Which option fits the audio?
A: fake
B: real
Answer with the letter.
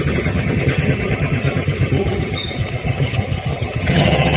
A